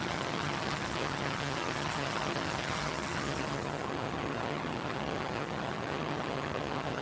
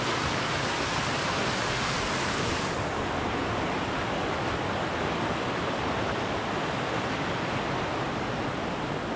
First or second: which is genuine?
second